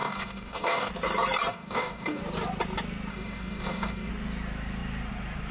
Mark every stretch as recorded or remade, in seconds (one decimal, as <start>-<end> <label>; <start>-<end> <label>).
0.0-0.9 remade; 0.9-1.5 recorded; 1.5-2.2 remade; 2.2-3.1 recorded; 3.1-4.1 remade; 4.1-5.5 recorded